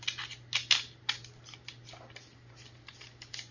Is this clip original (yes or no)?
yes